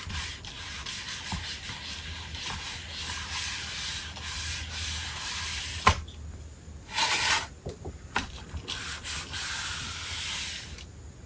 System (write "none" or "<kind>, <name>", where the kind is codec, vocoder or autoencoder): none